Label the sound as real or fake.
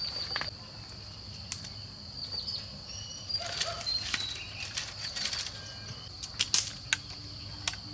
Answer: real